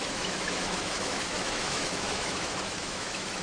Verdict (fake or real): fake